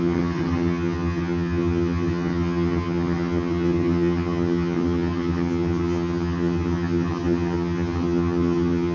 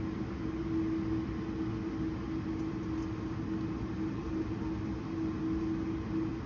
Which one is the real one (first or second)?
second